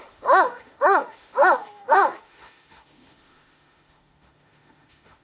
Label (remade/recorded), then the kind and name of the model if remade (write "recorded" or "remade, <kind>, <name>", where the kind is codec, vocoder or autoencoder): remade, autoencoder, DAC-VAE